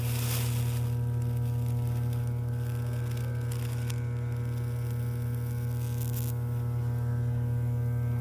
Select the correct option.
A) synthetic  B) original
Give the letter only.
B